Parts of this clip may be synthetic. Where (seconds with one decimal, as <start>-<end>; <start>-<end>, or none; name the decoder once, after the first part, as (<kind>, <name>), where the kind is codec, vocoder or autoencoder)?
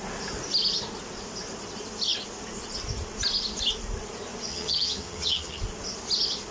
4.5-5.6 (vocoder, HiFi-GAN)